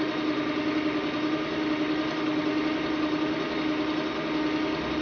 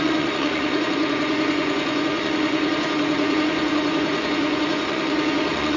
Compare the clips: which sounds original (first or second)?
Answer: first